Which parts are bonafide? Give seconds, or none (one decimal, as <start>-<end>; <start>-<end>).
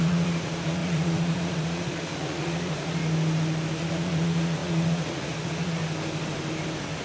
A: 3.0-3.8; 5.8-7.0